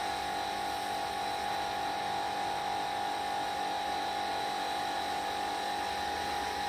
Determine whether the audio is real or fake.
real